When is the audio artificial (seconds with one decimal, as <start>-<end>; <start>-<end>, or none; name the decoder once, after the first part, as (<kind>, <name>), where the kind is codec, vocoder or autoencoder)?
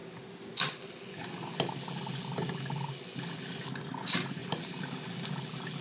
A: 4.4-5.0 (vocoder, BigVGAN v2)